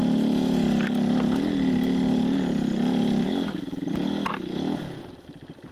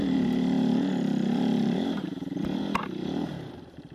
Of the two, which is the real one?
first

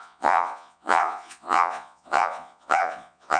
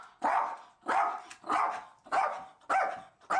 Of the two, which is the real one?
second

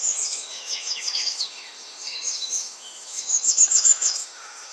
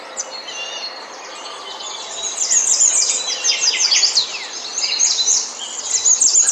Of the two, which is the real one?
second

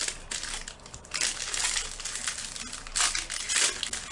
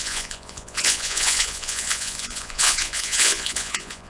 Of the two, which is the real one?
first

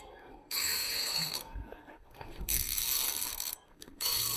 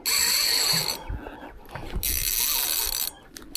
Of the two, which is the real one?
second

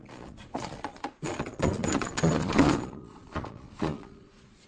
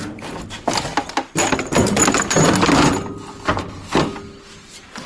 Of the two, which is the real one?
second